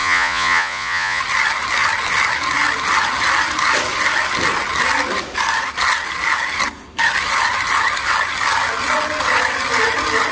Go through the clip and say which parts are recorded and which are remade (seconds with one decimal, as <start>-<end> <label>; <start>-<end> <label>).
0.0-1.2 remade; 1.2-10.3 recorded